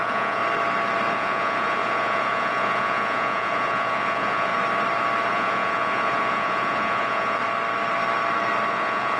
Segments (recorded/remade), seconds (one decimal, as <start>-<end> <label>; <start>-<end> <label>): 0.0-0.4 remade; 0.4-1.1 recorded; 1.1-4.5 remade; 4.5-5.3 recorded; 5.3-7.4 remade; 7.4-8.7 recorded; 8.7-9.2 remade